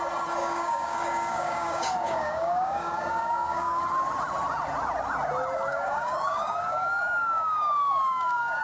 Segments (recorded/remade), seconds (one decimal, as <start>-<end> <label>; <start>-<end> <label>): 0.0-0.4 recorded; 0.4-3.8 remade; 3.8-5.7 recorded; 5.7-8.6 remade